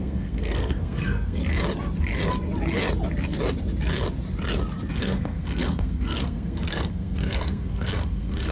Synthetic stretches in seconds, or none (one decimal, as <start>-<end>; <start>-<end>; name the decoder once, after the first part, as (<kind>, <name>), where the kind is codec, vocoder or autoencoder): 0.0-1.4 (codec, SNAC); 4.9-8.5